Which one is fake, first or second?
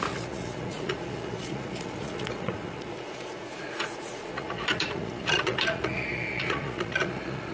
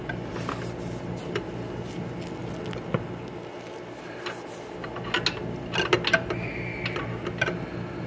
first